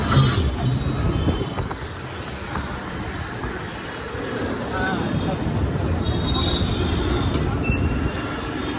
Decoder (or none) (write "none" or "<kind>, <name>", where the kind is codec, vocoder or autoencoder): none